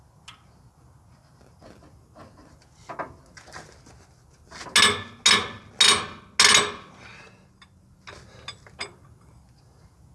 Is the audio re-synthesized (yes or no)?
no